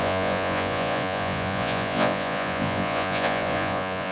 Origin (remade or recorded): remade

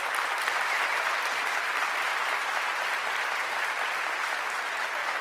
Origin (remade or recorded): recorded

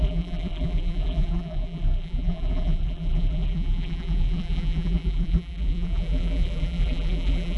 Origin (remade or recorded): remade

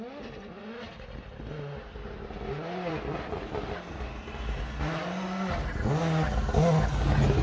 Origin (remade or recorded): recorded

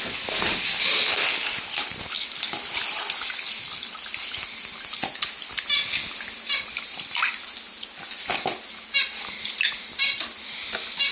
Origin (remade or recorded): recorded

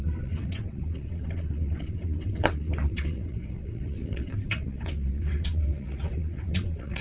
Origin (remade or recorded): remade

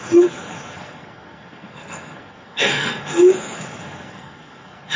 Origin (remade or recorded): remade